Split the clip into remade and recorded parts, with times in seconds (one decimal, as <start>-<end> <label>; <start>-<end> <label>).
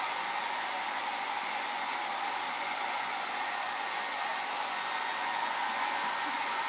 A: 0.0-1.9 remade; 1.9-2.5 recorded; 2.5-6.7 remade